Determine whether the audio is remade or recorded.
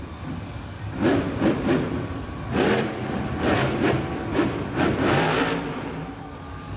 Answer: remade